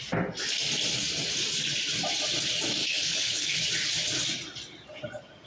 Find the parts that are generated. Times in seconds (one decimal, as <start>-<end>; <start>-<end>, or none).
2.8-3.6